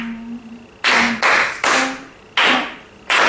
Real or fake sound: real